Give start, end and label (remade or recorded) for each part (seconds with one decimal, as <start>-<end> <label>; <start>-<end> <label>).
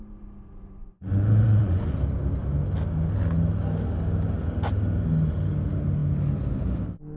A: 0.0-0.8 recorded; 0.8-1.8 remade; 1.8-7.2 recorded